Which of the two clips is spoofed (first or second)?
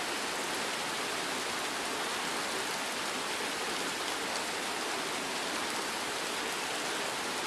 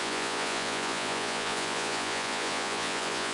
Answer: second